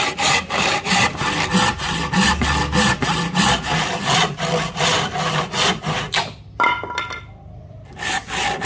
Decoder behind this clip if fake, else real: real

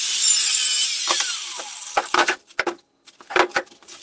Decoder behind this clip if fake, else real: real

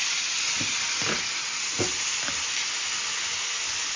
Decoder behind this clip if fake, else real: real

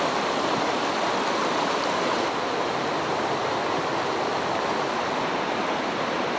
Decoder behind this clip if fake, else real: real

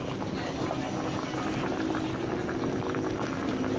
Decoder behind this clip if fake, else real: real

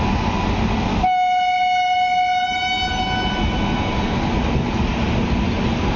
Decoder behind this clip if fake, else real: real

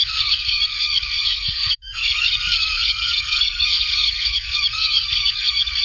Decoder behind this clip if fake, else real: fake, codec, SNAC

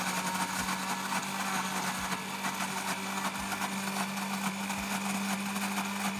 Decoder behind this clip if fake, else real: real